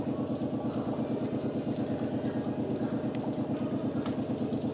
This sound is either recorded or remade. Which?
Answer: recorded